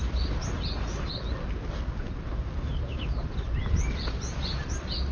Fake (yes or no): no